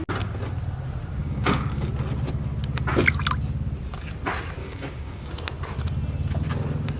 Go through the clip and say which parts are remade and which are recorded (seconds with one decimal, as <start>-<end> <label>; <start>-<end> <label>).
0.0-1.2 recorded; 1.2-1.9 remade; 1.9-4.6 recorded; 4.6-5.3 remade; 5.3-7.0 recorded